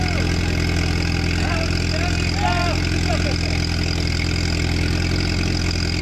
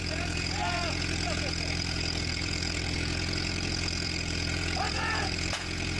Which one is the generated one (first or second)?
second